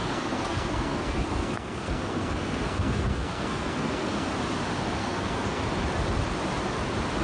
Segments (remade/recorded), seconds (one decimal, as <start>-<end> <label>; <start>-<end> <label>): 0.0-4.3 remade; 4.3-5.0 recorded; 5.0-5.6 remade; 5.6-7.2 recorded